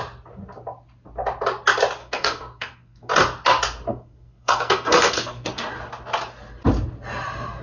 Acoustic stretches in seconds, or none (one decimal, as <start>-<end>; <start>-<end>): 0.0-2.0; 3.1-3.9; 5.6-7.6